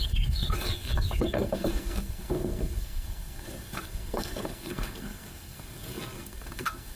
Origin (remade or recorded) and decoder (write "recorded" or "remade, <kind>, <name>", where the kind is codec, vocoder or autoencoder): remade, codec, SNAC